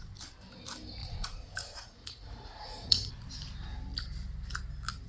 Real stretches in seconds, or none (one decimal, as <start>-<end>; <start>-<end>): 0.0-1.0; 3.1-5.1

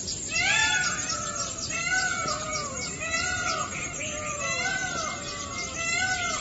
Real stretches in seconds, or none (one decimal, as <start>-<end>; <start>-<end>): 4.8-6.4

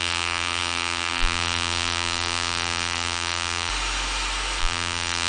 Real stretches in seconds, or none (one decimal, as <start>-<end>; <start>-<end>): 3.7-4.6

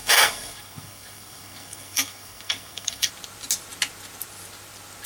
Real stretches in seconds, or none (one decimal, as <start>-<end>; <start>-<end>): 3.1-5.1

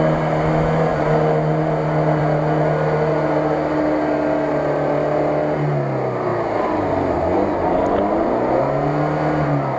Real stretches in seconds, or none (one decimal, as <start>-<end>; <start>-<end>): 0.0-9.8

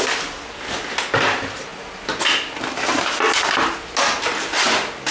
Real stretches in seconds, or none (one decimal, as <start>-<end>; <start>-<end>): 0.0-5.1

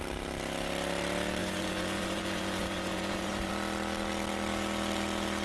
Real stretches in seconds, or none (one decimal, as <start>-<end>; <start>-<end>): 0.0-1.4; 3.5-5.4

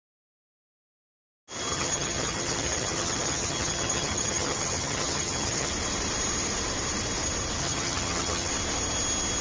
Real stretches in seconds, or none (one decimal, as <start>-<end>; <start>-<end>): 0.0-1.7; 5.7-7.6; 8.5-9.4